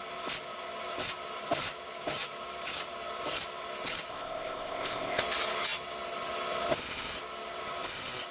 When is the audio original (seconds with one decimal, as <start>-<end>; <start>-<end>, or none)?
0.0-4.1; 5.2-8.3